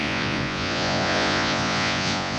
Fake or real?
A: fake